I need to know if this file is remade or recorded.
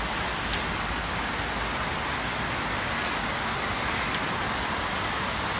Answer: recorded